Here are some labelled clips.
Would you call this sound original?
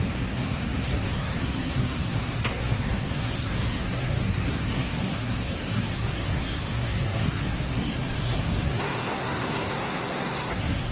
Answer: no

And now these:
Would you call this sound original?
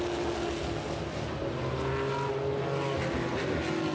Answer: yes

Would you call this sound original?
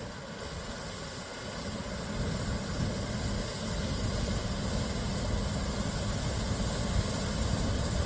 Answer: yes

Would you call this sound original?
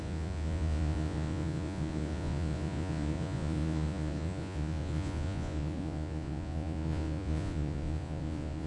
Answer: no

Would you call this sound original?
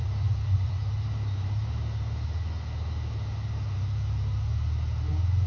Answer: no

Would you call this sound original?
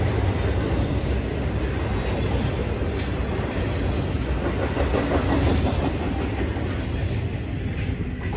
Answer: yes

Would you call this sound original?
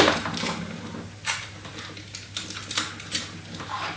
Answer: yes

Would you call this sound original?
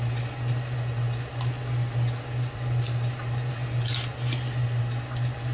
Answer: yes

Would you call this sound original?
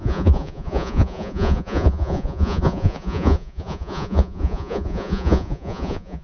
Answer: no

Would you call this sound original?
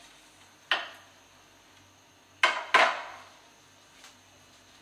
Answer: yes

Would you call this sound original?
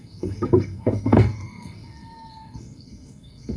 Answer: no